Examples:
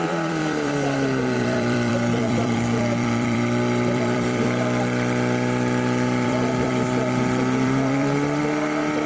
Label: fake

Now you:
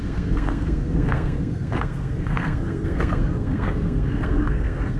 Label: fake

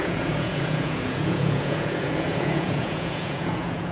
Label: fake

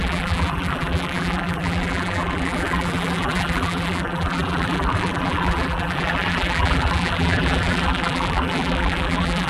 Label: fake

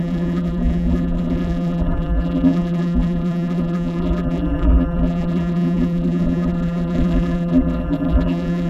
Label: fake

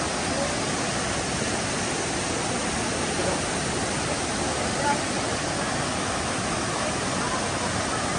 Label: real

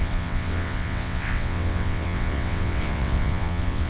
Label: fake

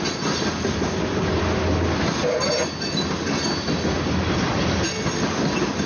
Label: real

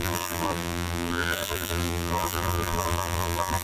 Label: fake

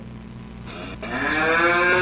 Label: real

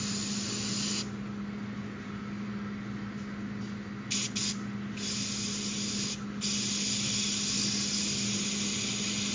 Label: real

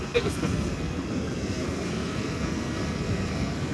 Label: fake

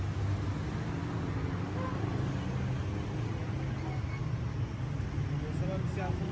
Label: real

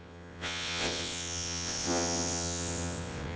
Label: fake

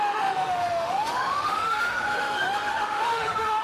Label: fake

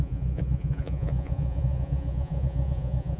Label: fake